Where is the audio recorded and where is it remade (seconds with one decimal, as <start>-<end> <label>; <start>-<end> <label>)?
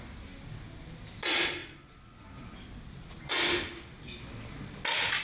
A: 0.0-5.2 recorded